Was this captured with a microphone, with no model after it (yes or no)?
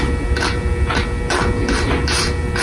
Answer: yes